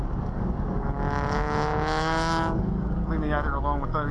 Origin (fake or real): fake